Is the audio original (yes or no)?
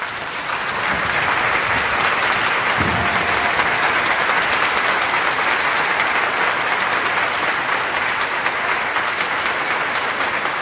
yes